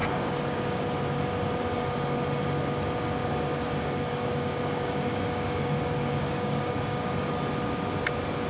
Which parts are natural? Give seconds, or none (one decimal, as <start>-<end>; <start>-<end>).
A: 0.8-3.2; 7.3-8.5